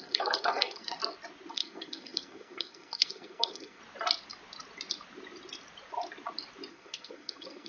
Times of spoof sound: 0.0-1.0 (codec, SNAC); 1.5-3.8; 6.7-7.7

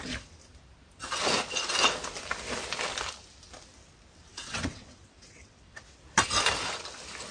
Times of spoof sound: 4.3-5.8 (vocoder, WaveNeXt)

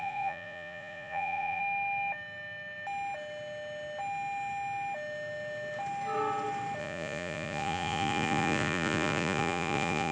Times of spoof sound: 0.0-1.6 (vocoder, Vocos); 6.8-10.1

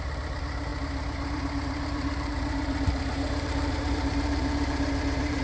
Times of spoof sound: 0.0-5.4 (vocoder, BigVGAN v2)